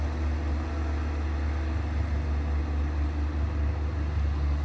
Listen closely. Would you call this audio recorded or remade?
recorded